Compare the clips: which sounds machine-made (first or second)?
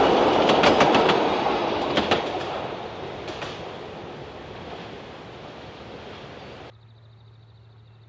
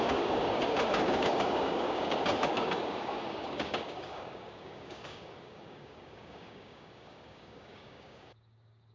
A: second